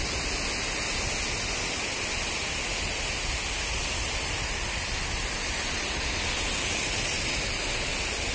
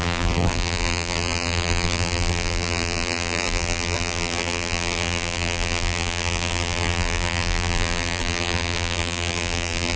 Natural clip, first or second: first